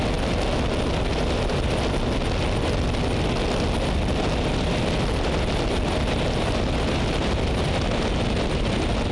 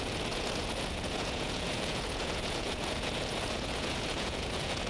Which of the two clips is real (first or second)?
first